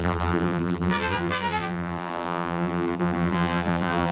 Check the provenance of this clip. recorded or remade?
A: remade